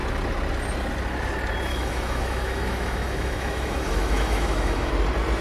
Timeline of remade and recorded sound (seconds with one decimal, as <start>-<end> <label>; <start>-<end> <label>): 0.0-1.7 recorded; 1.7-4.9 remade; 4.9-5.4 recorded